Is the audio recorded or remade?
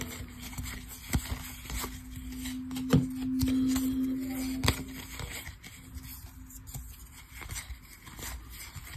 recorded